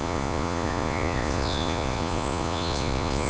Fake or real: fake